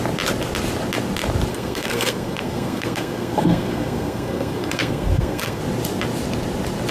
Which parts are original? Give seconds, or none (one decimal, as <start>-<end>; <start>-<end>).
0.0-1.5; 5.6-6.9